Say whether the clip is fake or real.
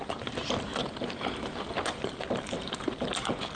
real